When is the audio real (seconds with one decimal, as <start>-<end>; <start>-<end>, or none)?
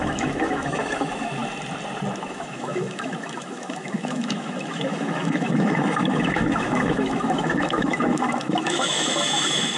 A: 1.4-2.2